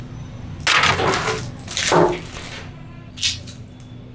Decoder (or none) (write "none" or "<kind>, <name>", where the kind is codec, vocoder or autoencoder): none